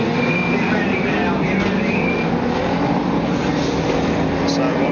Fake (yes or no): no